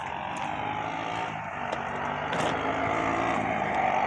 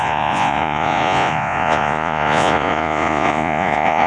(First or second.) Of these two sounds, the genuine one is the first